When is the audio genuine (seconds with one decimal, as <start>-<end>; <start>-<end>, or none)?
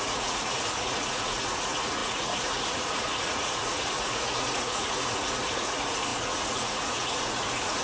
none